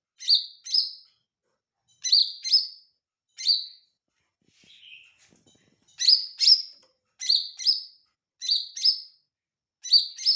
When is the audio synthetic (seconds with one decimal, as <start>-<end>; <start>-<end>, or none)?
none